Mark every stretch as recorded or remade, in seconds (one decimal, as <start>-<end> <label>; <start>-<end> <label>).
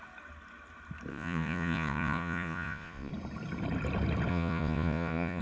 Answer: 0.0-1.1 recorded; 1.1-3.1 remade; 3.1-4.3 recorded; 4.3-5.4 remade